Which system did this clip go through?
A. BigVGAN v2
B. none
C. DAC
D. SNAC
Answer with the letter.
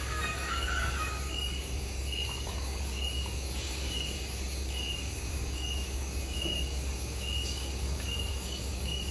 C